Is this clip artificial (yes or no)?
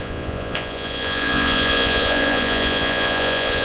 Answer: yes